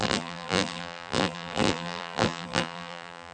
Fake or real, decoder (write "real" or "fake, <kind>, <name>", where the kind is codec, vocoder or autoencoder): fake, vocoder, BigVGAN v2